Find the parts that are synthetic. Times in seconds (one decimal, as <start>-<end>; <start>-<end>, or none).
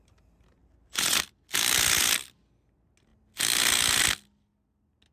none